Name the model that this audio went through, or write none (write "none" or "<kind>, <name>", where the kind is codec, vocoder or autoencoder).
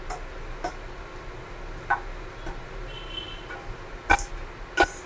none